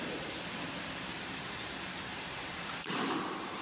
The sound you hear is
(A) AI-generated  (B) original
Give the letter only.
A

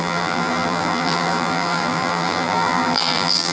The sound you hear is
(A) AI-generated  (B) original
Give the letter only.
A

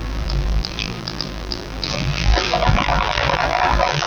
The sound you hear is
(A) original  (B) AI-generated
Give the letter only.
B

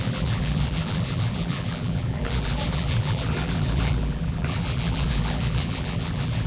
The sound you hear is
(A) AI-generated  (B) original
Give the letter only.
A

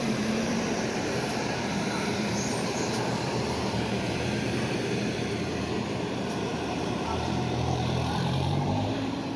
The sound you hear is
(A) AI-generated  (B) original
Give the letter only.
A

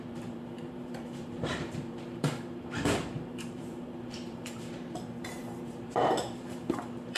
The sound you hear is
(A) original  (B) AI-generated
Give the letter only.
B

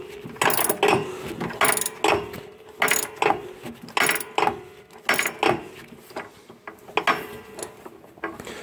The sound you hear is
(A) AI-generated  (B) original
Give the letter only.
B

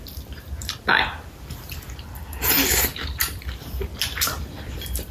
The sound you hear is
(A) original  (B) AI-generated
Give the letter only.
B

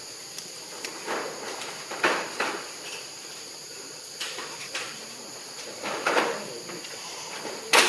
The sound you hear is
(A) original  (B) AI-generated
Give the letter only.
B